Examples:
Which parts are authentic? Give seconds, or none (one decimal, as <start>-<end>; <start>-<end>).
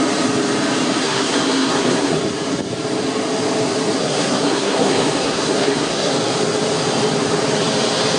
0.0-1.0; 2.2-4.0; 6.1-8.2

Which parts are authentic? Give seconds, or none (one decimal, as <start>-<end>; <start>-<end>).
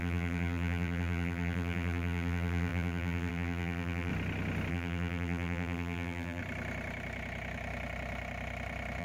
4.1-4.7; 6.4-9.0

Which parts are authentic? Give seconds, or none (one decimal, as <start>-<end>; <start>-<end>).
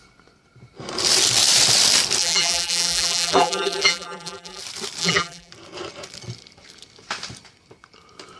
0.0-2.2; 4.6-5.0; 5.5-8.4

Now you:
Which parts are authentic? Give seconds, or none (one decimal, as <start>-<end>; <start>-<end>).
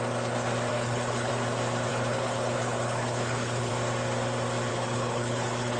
0.0-0.7; 1.3-1.9; 3.7-4.7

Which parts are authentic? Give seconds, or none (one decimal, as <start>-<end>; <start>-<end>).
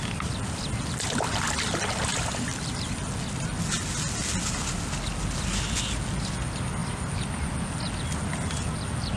0.0-2.1; 3.6-6.8; 7.6-9.2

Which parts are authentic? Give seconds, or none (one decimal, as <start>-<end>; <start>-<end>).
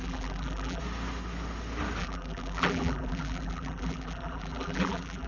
0.8-2.0